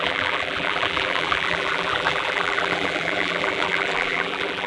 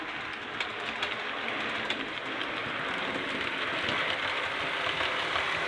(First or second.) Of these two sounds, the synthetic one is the first